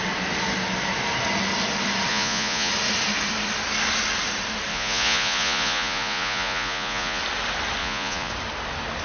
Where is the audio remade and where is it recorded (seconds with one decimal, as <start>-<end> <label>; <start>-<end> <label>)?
0.0-2.1 recorded; 2.1-2.7 remade; 2.7-4.7 recorded; 4.7-7.2 remade; 7.2-7.8 recorded; 7.8-8.3 remade; 8.3-9.0 recorded